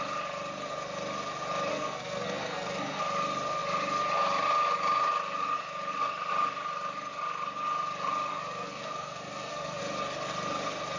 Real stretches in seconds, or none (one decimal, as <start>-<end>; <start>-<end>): 0.0-1.7; 3.0-8.3; 9.8-11.0

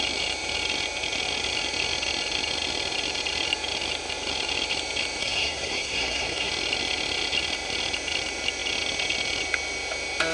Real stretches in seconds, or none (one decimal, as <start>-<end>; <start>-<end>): 0.0-5.2; 6.5-10.3

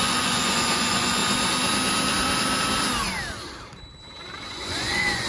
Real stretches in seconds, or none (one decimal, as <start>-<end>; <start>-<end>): 1.2-4.4

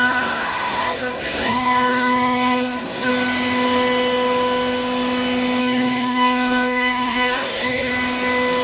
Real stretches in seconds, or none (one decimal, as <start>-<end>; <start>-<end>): 3.1-5.6; 7.9-8.6

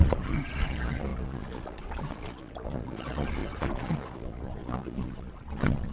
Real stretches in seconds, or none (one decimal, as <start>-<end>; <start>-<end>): none